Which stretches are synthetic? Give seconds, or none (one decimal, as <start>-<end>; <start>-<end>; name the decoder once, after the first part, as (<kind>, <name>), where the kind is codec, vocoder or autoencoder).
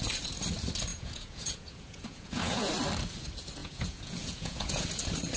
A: 0.9-2.7 (vocoder, Vocos); 3.6-4.9